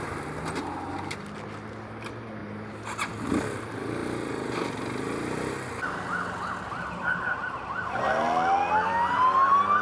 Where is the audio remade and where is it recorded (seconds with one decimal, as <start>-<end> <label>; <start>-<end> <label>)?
0.0-9.8 recorded

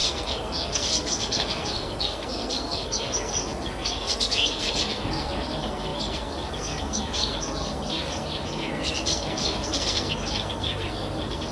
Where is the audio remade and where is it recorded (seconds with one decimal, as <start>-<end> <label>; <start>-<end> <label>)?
0.0-11.5 remade

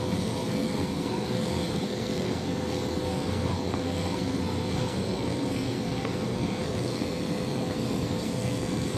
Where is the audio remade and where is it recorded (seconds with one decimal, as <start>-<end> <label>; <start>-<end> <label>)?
0.0-9.0 remade

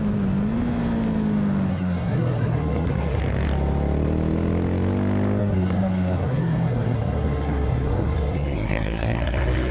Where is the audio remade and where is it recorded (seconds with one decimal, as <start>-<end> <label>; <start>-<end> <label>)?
0.0-1.7 recorded; 1.7-3.2 remade; 3.2-5.4 recorded; 5.4-9.7 remade

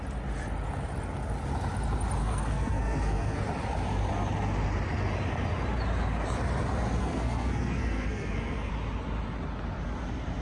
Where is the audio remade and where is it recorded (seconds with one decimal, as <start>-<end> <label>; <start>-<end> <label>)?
0.0-2.2 recorded; 2.2-3.4 remade; 3.4-7.0 recorded; 7.0-8.7 remade; 8.7-10.4 recorded